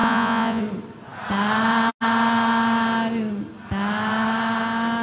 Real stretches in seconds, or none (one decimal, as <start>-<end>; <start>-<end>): 0.6-5.0

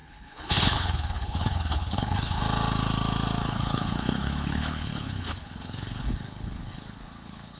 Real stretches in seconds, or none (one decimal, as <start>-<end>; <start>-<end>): 2.4-3.4

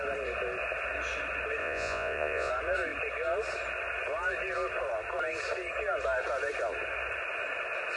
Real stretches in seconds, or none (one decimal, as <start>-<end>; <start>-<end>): 0.0-1.6; 2.5-8.0

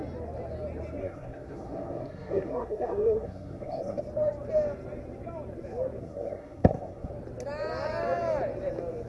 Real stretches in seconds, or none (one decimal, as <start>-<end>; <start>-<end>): 0.0-1.0; 4.0-6.0; 7.1-9.1

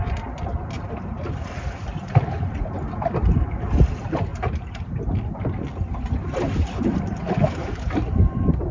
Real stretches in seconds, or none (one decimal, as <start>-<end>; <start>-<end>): 0.5-3.8; 4.3-8.0